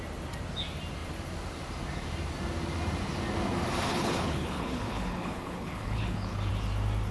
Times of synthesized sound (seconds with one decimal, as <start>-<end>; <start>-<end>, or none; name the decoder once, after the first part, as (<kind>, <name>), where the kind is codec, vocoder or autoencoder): 3.9-6.5 (codec, HILCodec)